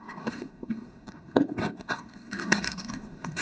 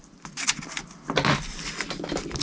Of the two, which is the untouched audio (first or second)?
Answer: second